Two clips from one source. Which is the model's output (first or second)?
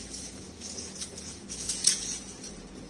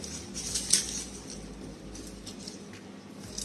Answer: first